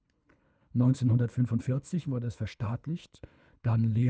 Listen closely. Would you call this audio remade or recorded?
remade